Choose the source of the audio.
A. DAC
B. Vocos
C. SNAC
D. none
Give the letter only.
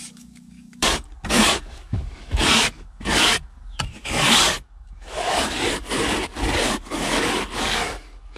A